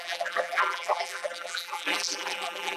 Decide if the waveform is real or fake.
fake